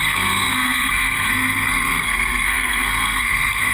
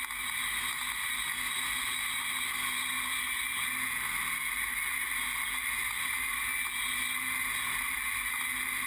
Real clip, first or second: second